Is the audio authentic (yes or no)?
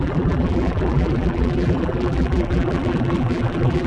no